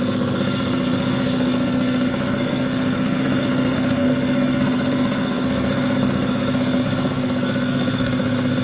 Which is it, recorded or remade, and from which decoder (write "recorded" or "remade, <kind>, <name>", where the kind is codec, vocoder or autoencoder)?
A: remade, codec, SNAC